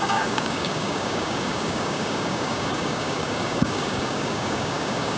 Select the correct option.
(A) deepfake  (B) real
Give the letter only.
A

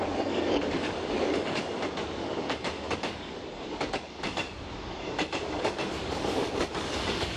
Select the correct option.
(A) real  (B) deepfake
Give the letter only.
B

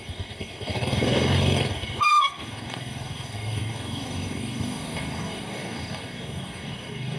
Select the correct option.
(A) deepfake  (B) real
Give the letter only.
A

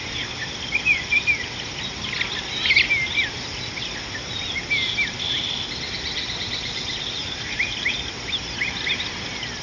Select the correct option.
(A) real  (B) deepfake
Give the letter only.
A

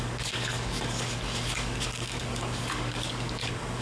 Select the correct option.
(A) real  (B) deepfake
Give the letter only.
B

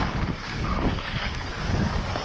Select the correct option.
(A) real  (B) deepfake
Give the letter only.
B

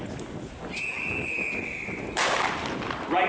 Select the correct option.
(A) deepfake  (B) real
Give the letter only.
B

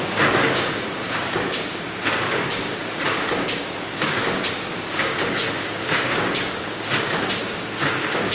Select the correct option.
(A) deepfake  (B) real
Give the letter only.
A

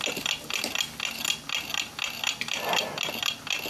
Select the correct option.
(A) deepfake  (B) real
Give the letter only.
B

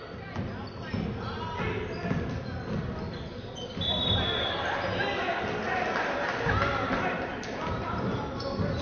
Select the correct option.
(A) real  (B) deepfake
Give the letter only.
A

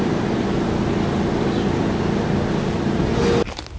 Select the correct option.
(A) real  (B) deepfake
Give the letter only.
A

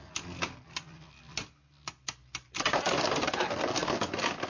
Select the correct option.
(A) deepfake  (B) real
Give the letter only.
B